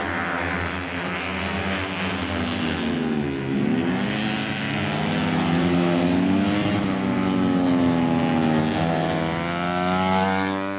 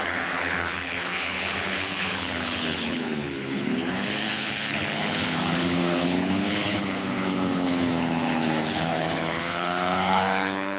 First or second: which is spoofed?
second